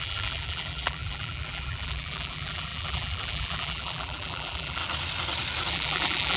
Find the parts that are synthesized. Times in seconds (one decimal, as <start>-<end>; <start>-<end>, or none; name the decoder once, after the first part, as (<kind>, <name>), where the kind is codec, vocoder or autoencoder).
0.0-4.8 (vocoder, BigVGAN v2); 5.7-6.4